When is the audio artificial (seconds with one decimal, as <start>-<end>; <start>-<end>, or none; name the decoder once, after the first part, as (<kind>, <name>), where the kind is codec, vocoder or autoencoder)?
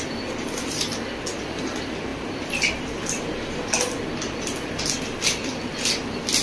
none